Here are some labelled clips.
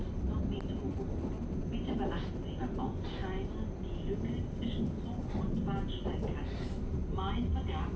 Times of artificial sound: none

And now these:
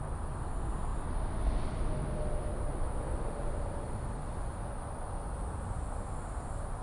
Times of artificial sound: none

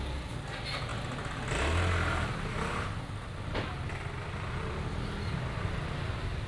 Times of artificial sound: none

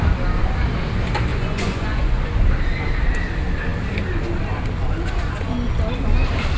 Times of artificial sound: 1.3-2.4

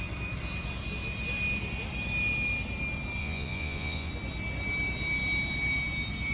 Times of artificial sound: 3.2-4.1

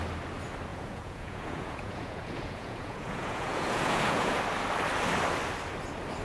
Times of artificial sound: 0.7-4.4

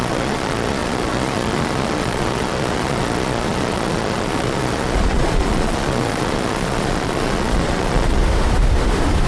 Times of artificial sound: 0.0-8.2